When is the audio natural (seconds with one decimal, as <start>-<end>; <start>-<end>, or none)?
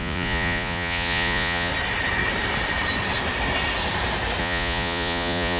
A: 1.7-4.4